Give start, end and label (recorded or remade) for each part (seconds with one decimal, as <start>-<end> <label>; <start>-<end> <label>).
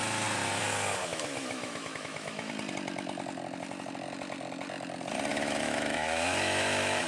0.0-1.0 recorded; 1.0-2.5 remade; 2.5-5.3 recorded; 5.3-7.1 remade